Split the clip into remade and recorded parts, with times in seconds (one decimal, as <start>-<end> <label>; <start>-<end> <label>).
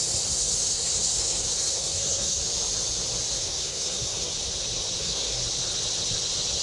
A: 0.0-2.4 remade; 2.4-3.3 recorded; 3.3-4.3 remade; 4.3-5.0 recorded; 5.0-5.4 remade; 5.4-6.6 recorded